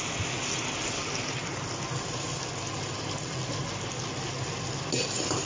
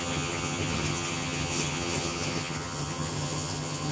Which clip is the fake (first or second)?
second